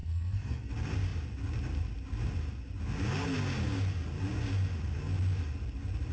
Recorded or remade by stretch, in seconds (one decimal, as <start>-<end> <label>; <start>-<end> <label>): 0.0-0.7 remade; 0.7-6.1 recorded